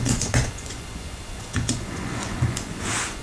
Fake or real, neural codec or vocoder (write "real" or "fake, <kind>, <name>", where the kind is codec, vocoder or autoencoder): fake, vocoder, Vocos